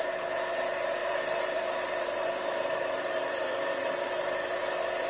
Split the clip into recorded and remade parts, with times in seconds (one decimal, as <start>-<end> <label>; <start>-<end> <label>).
0.0-1.0 recorded; 1.0-4.1 remade; 4.1-5.1 recorded